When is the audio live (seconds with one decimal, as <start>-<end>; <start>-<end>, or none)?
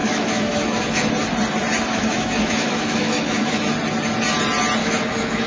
1.1-1.9; 3.6-4.8